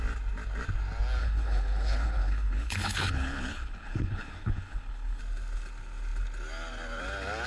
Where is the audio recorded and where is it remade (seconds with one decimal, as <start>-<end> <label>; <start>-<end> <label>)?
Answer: 0.0-1.2 recorded; 1.2-5.2 remade; 5.2-7.5 recorded

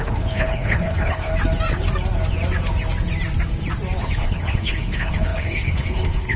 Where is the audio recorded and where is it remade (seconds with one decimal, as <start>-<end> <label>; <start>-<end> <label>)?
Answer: 0.0-1.3 remade; 1.3-4.0 recorded; 4.0-6.4 remade

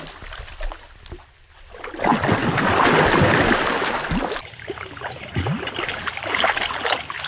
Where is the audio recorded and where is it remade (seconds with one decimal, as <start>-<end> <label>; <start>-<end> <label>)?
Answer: 0.0-7.3 recorded

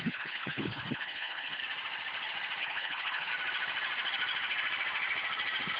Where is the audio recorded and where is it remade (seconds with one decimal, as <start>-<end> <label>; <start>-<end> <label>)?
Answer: 0.0-1.6 remade; 1.6-2.6 recorded; 2.6-3.3 remade; 3.3-5.8 recorded

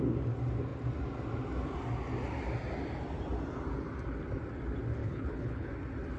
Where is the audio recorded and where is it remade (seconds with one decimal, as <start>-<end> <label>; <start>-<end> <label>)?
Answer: 0.0-5.0 recorded; 5.0-5.7 remade; 5.7-6.2 recorded

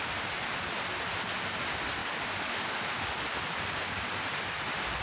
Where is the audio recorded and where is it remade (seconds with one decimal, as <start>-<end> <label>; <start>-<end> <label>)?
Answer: 0.0-5.0 recorded

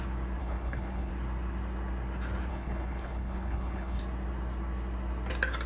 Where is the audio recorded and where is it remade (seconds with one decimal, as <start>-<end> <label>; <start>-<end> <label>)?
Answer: 0.0-0.4 recorded; 0.4-1.1 remade; 1.1-2.5 recorded; 2.5-4.0 remade; 4.0-5.7 recorded